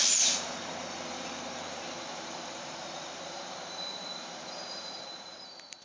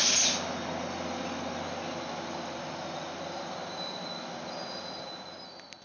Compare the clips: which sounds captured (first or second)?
second